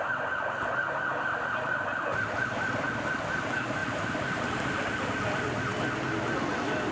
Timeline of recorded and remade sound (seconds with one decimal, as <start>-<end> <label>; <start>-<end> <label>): 0.0-3.8 recorded; 3.8-4.4 remade; 4.4-6.9 recorded

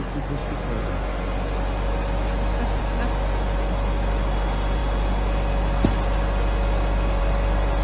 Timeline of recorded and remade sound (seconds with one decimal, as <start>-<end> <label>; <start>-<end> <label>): 0.0-7.8 recorded

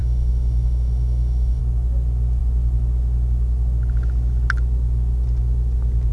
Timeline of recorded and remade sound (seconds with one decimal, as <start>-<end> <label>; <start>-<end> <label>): 0.0-1.6 remade; 1.6-6.1 recorded

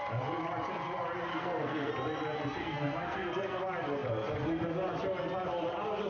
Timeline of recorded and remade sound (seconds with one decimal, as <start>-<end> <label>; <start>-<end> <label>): 0.0-1.3 recorded; 1.3-1.9 remade; 1.9-2.6 recorded; 2.6-3.6 remade; 3.6-6.1 recorded